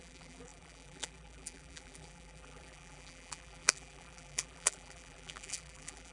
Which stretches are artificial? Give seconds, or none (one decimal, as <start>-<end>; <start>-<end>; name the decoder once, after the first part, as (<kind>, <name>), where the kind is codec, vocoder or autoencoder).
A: 0.0-6.1 (vocoder, BigVGAN v2)